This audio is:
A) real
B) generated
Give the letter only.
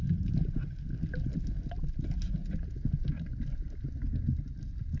A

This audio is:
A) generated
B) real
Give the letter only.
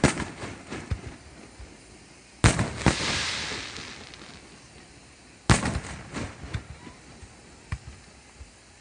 B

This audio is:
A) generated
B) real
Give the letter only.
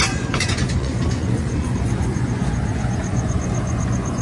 A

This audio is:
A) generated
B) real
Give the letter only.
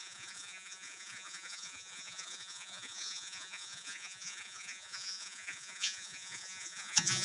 A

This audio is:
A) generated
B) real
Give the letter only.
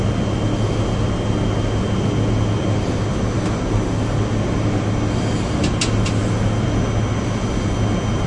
B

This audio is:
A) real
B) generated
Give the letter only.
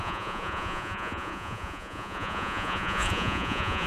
B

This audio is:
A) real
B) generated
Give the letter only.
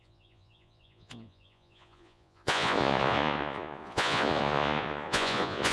B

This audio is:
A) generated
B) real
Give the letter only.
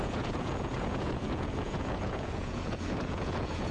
A